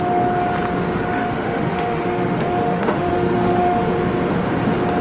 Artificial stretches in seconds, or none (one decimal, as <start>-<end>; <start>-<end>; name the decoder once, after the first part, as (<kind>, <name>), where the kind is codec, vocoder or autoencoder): 1.2-3.9 (autoencoder, DAC-VAE)